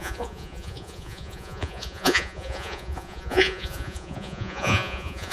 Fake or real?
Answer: fake